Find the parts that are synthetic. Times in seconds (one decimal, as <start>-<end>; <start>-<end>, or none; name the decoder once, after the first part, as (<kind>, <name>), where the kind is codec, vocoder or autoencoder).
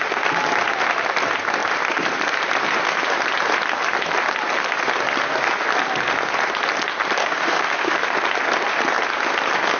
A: 7.2-8.0 (autoencoder, DAC-VAE)